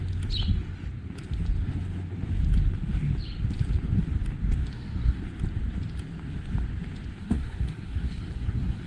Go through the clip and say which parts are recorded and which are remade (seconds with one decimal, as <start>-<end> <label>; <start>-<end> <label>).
0.0-4.7 recorded; 4.7-5.2 remade; 5.2-7.2 recorded; 7.2-8.9 remade